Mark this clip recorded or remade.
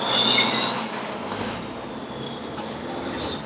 recorded